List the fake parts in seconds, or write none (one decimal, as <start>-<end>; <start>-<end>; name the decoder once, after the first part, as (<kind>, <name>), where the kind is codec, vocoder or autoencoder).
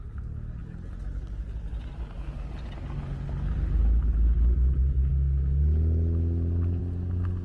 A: none